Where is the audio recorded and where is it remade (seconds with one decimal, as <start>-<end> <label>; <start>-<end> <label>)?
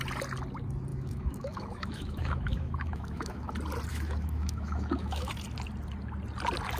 0.0-0.9 recorded; 0.9-3.5 remade; 3.5-3.9 recorded; 3.9-5.3 remade; 5.3-6.8 recorded